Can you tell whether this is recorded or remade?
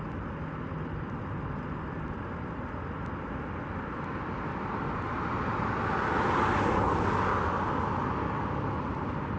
recorded